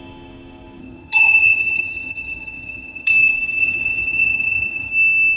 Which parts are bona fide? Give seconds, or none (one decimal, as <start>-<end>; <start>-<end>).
0.0-0.8; 3.1-3.6; 4.9-5.4